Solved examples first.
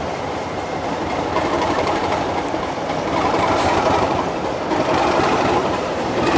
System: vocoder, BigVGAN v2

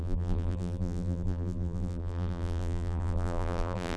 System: vocoder, BigVGAN v2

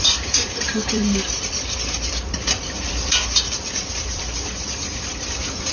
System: vocoder, BigVGAN v2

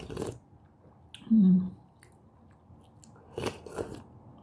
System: none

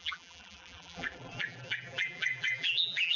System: vocoder, BigVGAN v2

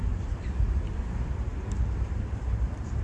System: vocoder, BigVGAN v2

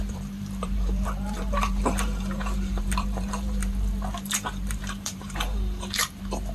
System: vocoder, BigVGAN v2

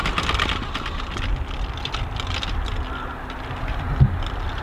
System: none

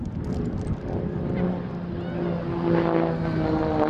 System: none